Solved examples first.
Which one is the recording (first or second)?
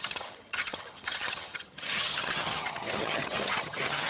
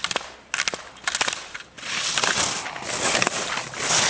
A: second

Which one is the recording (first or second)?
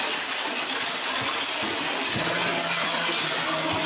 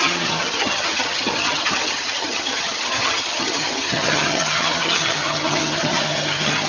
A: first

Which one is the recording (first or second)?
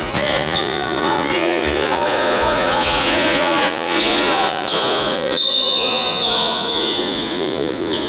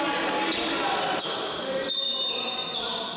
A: second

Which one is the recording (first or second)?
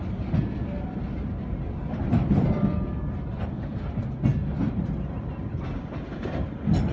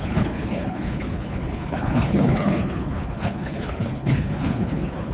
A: first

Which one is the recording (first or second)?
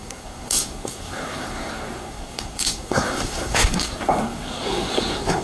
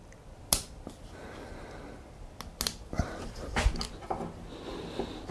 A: second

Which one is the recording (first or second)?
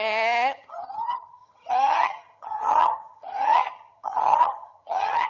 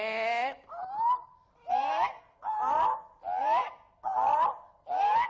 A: second